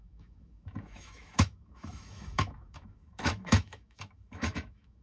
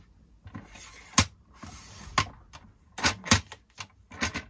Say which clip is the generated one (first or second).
first